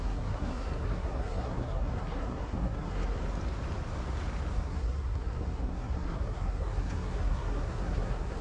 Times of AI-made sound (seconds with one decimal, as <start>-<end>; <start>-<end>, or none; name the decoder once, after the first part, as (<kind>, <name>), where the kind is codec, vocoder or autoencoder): 0.0-3.2 (codec, SNAC); 4.5-8.4